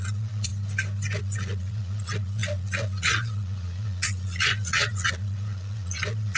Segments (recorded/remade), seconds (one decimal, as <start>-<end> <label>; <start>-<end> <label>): 0.0-0.5 remade; 0.5-1.2 recorded; 1.2-6.4 remade